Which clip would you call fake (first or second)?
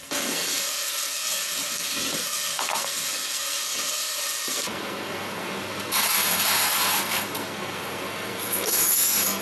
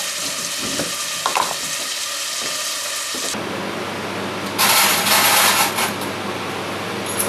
first